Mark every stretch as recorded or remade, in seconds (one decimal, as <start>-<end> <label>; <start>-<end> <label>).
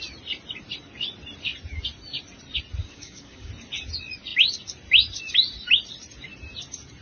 0.0-2.8 recorded; 2.8-3.5 remade; 3.5-7.0 recorded